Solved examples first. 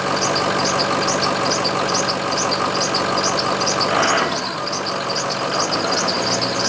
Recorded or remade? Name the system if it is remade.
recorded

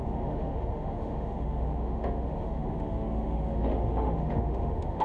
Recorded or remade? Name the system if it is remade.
remade, autoencoder, DAC-VAE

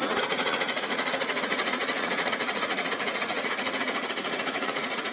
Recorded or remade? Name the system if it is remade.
remade, vocoder, Vocos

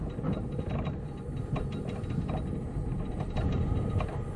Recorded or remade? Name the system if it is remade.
recorded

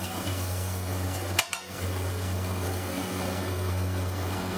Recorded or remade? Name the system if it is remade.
remade, codec, SNAC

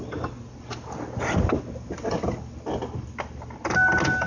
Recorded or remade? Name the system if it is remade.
recorded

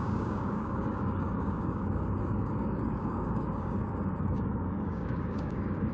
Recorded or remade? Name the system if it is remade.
remade, codec, DAC